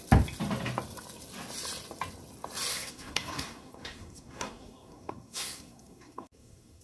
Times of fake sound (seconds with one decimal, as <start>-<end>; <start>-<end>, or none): 2.7-6.8